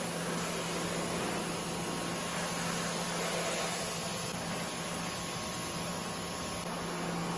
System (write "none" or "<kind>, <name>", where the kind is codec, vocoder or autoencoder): none